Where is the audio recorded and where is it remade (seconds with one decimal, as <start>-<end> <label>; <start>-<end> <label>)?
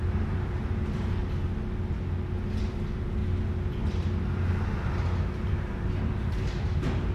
0.0-1.2 remade; 1.2-2.6 recorded; 2.6-3.2 remade; 3.2-5.5 recorded; 5.5-7.1 remade